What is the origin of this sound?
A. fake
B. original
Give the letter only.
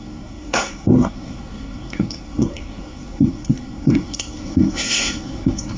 A